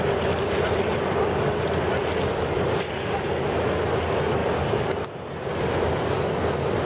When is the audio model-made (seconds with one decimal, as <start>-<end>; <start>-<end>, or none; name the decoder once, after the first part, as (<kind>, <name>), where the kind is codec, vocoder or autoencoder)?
none